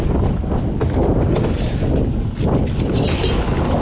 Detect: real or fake real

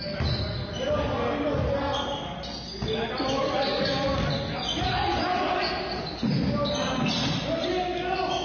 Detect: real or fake real